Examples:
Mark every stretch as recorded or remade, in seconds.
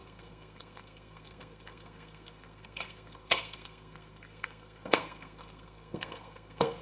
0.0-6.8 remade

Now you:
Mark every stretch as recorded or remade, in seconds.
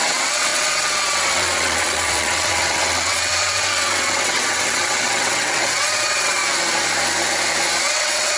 0.0-6.4 remade; 6.4-7.8 recorded; 7.8-8.4 remade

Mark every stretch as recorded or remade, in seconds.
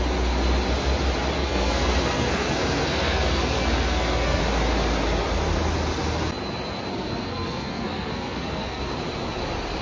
0.0-1.4 recorded; 1.4-4.4 remade; 4.4-6.9 recorded; 6.9-8.8 remade; 8.8-9.8 recorded